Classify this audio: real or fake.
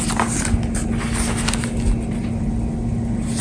real